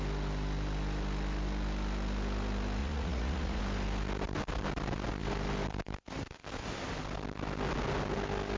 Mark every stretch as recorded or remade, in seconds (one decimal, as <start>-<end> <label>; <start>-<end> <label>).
0.0-2.8 recorded; 2.8-3.6 remade; 3.6-8.6 recorded